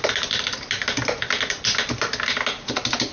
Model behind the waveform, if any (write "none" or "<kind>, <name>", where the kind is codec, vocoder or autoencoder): none